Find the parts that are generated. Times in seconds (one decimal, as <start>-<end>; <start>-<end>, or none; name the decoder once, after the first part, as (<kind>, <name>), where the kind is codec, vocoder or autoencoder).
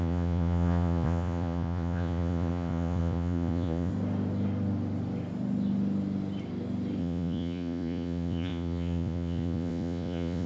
0.0-3.9 (vocoder, Vocos); 7.0-10.5